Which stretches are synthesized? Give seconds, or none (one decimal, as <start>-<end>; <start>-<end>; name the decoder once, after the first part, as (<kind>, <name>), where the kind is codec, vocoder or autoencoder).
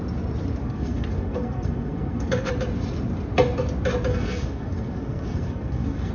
0.6-2.5 (codec, SNAC); 4.1-6.1